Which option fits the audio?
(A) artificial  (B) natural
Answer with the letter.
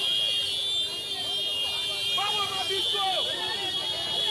B